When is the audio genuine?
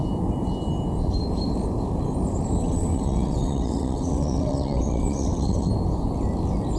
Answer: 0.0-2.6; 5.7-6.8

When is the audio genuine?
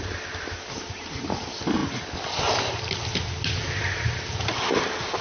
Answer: 0.0-5.2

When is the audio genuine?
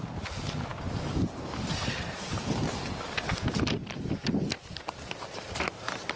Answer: 0.0-6.2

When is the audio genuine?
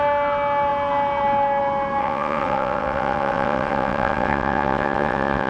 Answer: 0.0-2.0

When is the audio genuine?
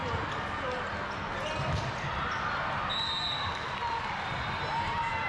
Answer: 0.0-5.3